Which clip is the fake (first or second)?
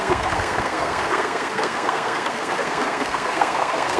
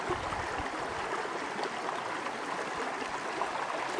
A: first